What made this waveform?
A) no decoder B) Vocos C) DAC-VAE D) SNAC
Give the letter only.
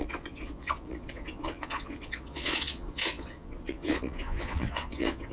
B